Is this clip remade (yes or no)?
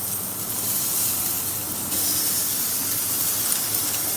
no